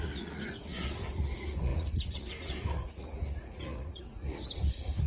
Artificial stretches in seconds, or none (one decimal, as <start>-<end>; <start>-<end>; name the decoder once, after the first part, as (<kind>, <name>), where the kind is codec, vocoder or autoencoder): 0.0-5.1 (vocoder, Vocos)